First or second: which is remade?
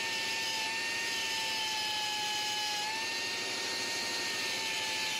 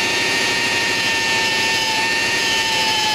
second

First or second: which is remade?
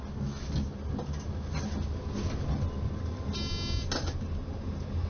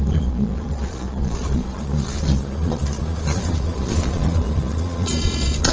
second